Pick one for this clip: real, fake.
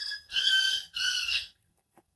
fake